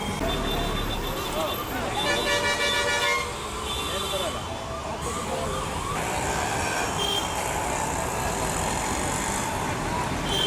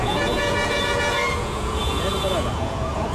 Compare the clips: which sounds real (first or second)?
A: first